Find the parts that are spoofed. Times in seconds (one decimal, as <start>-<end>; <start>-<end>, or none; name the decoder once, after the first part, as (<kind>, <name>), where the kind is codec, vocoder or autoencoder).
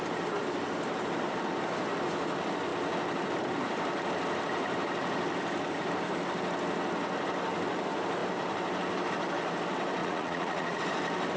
10.0-10.8 (vocoder, Vocos)